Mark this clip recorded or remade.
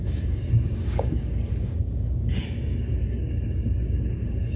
remade